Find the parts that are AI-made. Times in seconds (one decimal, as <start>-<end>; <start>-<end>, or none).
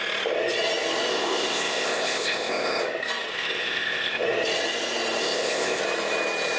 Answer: 1.1-2.8; 3.3-4.2; 5.2-5.8